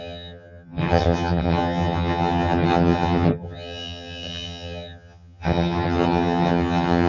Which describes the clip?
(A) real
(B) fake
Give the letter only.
B